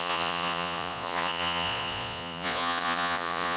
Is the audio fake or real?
fake